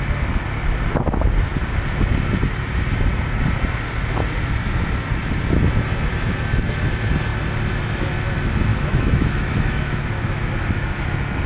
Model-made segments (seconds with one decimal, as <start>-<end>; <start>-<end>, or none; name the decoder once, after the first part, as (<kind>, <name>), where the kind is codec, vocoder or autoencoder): 8.7-11.0 (autoencoder, DAC-VAE)